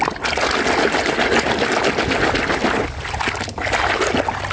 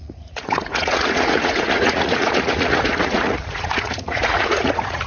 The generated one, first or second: second